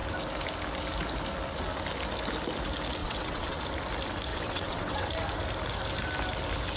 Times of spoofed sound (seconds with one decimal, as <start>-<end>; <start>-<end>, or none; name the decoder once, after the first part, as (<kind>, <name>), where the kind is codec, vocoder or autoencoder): 3.0-3.6 (vocoder, WaveNeXt); 4.3-5.1